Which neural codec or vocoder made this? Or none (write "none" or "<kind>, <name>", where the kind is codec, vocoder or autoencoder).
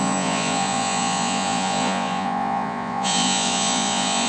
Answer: vocoder, Vocos